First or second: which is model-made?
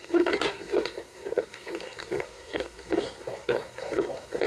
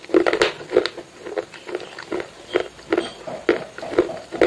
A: first